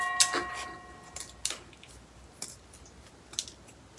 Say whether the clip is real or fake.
real